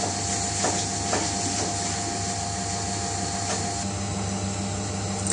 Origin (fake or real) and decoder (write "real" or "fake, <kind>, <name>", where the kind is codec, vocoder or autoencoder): real